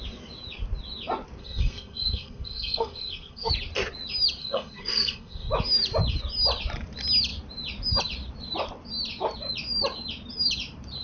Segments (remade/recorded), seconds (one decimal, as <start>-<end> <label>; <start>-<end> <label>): 0.0-1.4 recorded; 1.4-3.5 remade; 3.5-4.4 recorded; 4.4-5.5 remade; 5.5-11.0 recorded